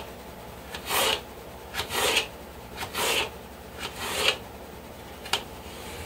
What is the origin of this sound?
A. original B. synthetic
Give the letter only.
B